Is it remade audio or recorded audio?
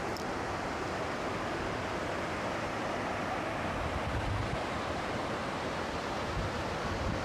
recorded